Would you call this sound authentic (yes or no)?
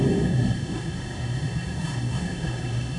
no